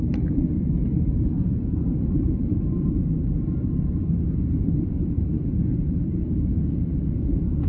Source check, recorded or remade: remade